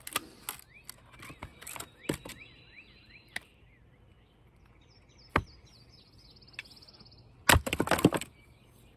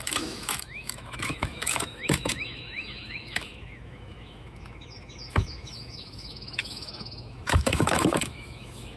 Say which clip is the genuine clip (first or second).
first